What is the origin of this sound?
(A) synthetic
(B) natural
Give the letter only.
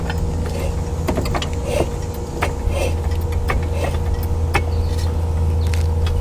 B